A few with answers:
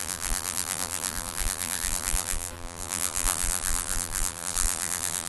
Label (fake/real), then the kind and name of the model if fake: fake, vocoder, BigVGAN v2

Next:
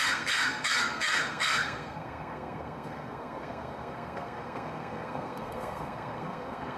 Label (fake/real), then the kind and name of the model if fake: fake, codec, SNAC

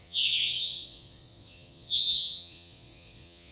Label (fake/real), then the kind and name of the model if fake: fake, vocoder, Vocos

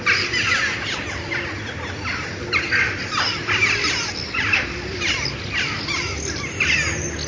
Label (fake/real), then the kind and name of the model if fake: real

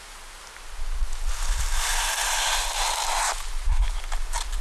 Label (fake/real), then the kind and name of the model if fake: real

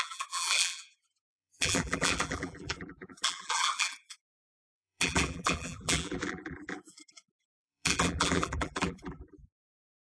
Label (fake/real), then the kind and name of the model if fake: fake, vocoder, BigVGAN v2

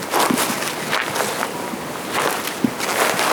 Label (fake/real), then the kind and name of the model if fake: real